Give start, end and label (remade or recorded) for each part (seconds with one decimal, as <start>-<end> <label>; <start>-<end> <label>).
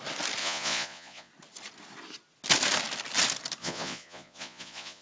0.0-0.4 recorded; 0.4-1.3 remade; 1.3-3.6 recorded; 3.6-5.0 remade